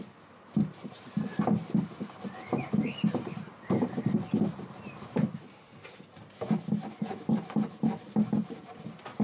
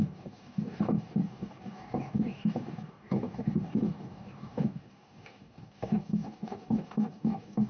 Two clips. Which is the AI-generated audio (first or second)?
second